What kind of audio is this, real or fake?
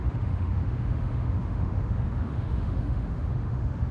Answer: fake